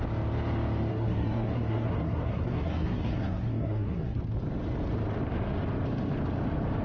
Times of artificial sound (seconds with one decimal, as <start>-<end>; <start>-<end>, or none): 0.9-4.2